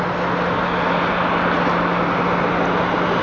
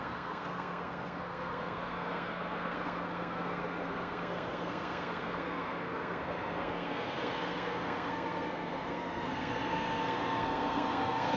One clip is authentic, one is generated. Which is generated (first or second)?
second